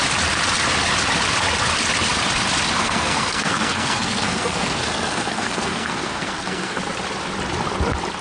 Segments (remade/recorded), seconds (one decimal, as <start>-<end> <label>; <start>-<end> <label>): 0.0-2.8 recorded; 2.8-6.8 remade; 6.8-8.2 recorded